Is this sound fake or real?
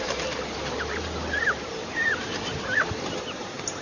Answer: fake